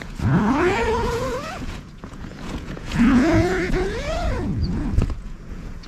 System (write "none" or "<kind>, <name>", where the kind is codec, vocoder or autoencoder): vocoder, Vocos